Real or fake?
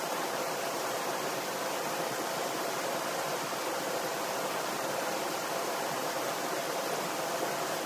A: real